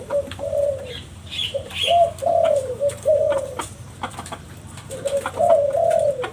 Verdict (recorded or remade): remade